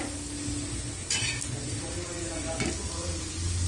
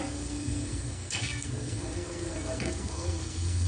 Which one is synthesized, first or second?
second